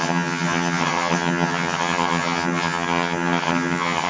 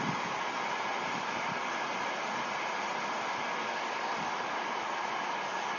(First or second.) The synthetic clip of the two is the first